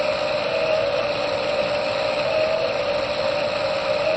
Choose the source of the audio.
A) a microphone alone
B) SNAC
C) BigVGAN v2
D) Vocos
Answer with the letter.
A